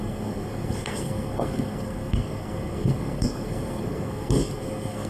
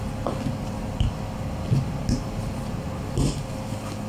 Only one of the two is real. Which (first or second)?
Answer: second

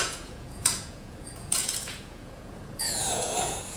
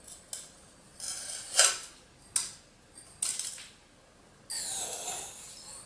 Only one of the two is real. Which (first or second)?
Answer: second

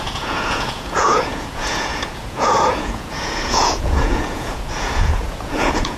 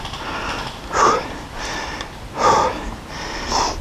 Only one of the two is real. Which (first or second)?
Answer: second